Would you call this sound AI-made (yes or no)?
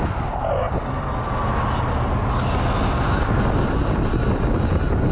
no